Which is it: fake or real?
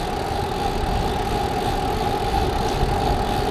real